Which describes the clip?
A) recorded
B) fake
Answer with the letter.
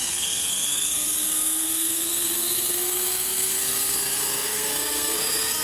B